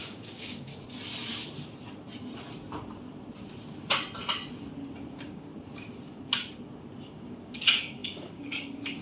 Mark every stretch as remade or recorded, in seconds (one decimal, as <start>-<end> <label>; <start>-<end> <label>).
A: 0.0-0.7 remade; 0.7-5.1 recorded; 5.1-5.5 remade; 5.5-7.2 recorded; 7.2-9.0 remade